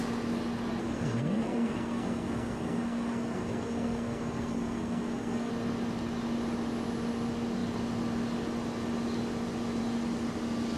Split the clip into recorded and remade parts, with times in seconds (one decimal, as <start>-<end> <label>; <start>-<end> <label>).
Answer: 0.0-0.8 recorded; 0.8-5.5 remade; 5.5-10.8 recorded